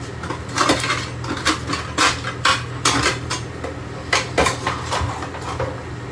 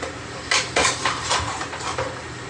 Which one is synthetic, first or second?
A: second